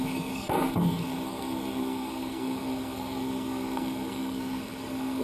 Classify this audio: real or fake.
fake